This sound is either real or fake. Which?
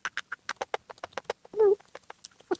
real